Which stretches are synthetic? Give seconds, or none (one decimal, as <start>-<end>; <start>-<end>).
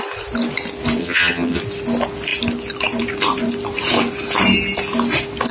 1.0-1.6